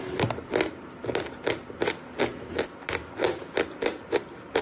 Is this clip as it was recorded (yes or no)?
yes